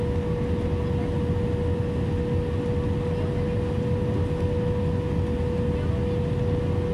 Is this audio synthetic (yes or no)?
no